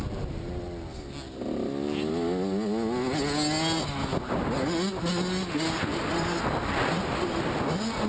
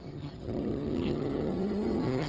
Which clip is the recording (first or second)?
first